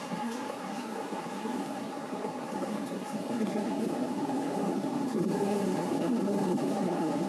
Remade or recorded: remade